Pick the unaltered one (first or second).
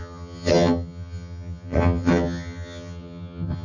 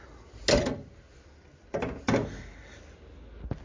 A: second